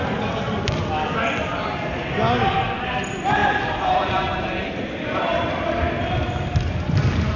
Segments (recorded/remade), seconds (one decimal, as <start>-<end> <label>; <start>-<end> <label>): 0.0-3.4 recorded; 3.4-5.4 remade; 5.4-7.4 recorded